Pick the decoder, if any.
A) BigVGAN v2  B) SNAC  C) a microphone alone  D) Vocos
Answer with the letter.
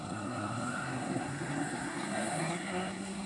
B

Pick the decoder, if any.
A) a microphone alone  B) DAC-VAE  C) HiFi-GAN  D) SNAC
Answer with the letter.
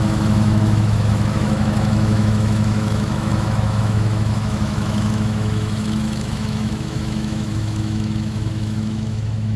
B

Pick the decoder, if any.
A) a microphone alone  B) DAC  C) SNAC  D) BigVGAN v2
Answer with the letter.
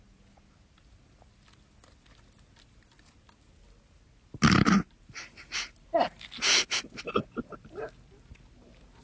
A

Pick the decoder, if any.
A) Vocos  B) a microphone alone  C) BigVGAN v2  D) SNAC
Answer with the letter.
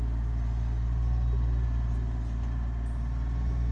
B